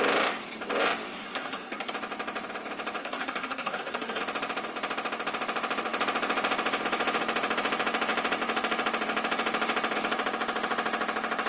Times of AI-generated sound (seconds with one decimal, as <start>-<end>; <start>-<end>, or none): 1.2-1.9; 3.0-4.2